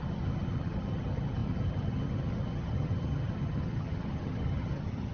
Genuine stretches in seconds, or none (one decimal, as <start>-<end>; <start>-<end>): none